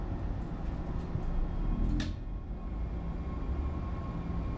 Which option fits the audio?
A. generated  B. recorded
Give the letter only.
B